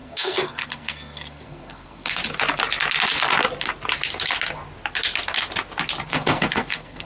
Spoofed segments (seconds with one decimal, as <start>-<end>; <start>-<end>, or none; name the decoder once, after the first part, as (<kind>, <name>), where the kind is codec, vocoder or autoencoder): 0.0-2.2 (codec, SNAC); 6.1-7.1